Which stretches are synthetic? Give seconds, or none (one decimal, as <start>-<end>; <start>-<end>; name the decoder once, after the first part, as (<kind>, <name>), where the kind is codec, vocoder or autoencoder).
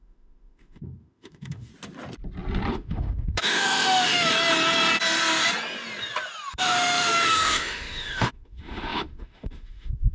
0.0-1.7 (autoencoder, DAC-VAE); 2.7-4.3; 6.5-10.1